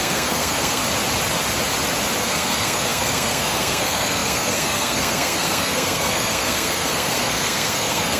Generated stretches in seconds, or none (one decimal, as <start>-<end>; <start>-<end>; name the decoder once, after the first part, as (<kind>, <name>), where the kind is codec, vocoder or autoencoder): 0.0-0.8 (codec, SNAC); 2.2-8.2